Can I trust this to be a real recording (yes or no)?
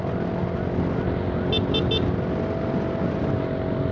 yes